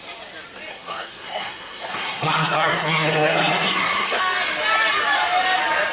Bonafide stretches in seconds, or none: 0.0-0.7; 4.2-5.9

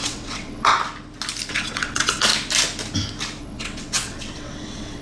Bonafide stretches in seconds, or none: 0.7-1.5; 2.3-3.4